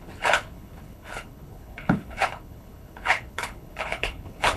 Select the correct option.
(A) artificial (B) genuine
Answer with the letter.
A